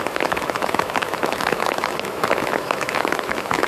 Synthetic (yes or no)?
yes